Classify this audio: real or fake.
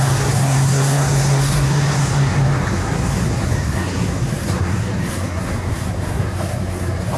fake